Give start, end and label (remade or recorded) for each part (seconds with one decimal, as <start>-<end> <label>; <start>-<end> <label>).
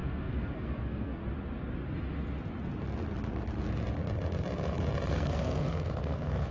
0.0-1.2 remade; 1.2-5.1 recorded; 5.1-6.5 remade